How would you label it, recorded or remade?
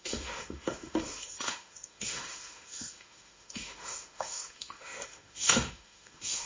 remade